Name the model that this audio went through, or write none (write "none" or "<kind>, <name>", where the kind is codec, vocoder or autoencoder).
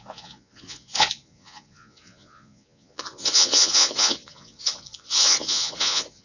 vocoder, Vocos